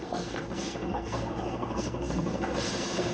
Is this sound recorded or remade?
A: remade